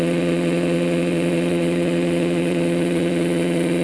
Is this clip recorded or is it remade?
remade